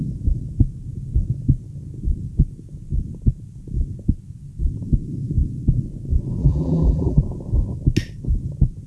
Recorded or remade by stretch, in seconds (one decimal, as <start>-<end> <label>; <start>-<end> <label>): 0.0-6.4 recorded; 6.4-7.2 remade; 7.2-8.9 recorded